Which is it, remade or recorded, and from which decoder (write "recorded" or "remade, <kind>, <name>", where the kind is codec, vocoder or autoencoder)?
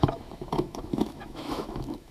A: remade, autoencoder, DAC-VAE